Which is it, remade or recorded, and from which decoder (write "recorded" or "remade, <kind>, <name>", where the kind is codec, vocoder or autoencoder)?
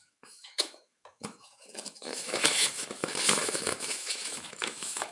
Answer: remade, autoencoder, DAC-VAE